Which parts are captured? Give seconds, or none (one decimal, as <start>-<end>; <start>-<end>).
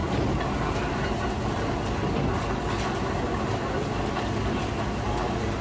0.0-5.6